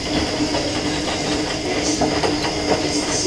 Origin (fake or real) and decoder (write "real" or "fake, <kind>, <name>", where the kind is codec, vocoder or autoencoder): real